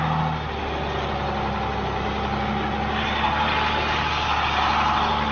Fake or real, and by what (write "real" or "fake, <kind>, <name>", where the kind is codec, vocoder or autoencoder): real